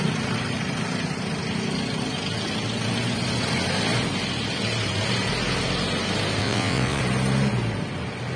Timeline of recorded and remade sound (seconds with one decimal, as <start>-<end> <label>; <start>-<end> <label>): 0.0-6.4 recorded; 6.4-7.0 remade; 7.0-8.4 recorded